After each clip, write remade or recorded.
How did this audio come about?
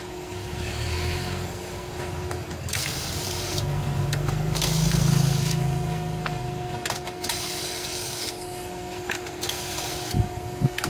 remade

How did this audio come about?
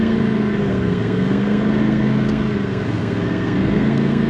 remade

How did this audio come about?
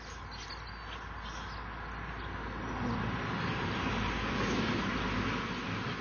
recorded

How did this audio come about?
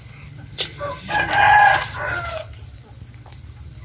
recorded